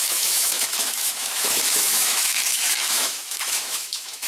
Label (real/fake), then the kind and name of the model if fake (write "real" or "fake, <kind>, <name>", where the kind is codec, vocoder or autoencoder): fake, autoencoder, DAC-VAE